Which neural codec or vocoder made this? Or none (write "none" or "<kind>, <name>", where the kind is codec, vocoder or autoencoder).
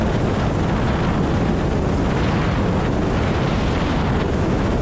none